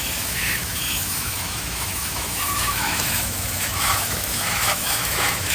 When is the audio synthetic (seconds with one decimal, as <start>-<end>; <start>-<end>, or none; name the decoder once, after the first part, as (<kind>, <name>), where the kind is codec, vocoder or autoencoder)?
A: 0.0-5.5 (autoencoder, DAC-VAE)